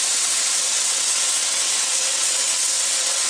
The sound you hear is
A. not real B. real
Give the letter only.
A